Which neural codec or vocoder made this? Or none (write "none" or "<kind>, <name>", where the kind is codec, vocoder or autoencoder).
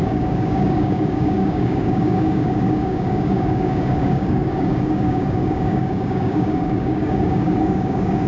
codec, DAC